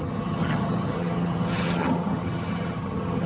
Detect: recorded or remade remade